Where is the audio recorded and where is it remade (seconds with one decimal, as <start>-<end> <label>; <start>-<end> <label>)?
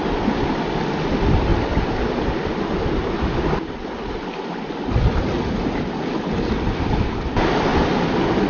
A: 0.0-8.5 recorded